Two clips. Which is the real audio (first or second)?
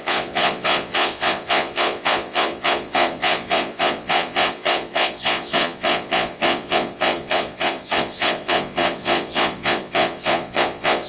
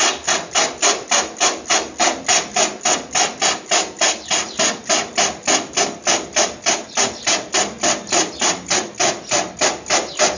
second